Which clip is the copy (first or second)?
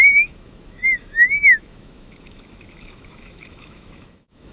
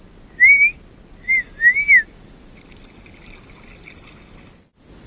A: first